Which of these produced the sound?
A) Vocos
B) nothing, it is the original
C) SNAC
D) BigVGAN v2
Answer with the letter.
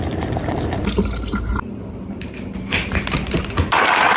D